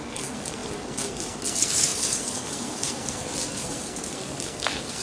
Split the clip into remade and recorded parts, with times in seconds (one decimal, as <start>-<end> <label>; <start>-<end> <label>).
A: 0.0-5.0 remade